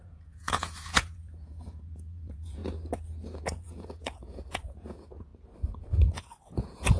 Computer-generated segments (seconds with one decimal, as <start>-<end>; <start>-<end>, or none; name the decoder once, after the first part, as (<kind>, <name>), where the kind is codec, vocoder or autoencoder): 0.0-2.6 (vocoder, Vocos); 3.4-5.3; 6.0-7.0